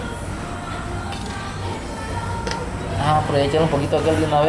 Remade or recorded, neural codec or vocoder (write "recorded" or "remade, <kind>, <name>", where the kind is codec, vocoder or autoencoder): recorded